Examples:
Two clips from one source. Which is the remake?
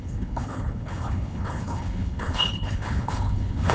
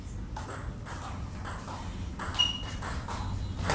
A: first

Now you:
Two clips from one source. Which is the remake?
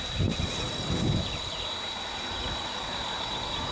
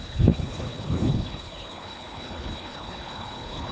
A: second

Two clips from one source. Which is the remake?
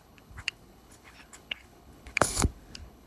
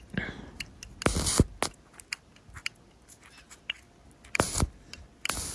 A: first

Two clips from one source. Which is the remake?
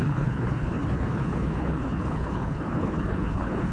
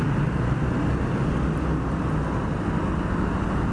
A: first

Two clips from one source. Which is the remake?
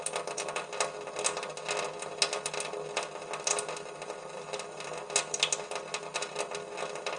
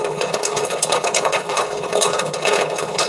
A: second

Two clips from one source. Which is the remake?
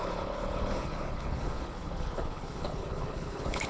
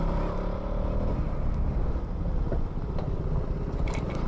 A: first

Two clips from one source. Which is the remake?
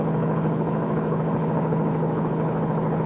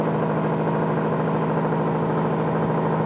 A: first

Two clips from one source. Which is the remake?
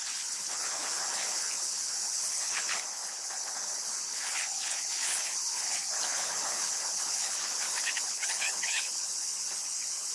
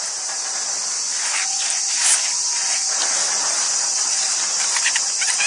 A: first